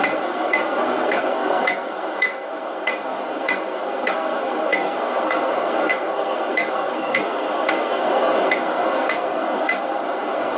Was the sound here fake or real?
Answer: fake